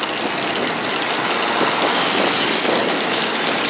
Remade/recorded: recorded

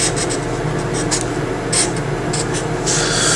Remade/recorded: recorded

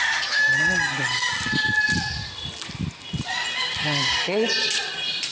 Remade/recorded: recorded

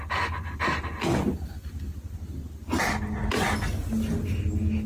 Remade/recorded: recorded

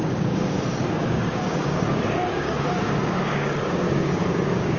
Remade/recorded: remade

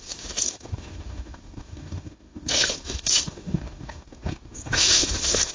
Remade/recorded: remade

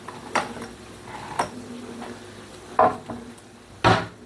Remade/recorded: recorded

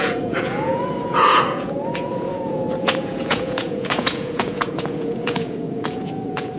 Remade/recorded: remade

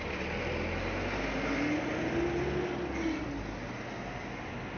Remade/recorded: recorded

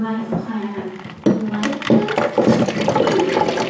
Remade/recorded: recorded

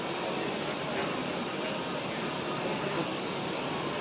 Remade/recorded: recorded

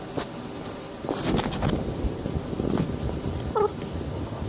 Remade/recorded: recorded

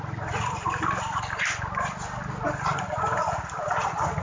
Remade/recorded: remade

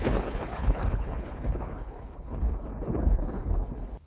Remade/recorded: remade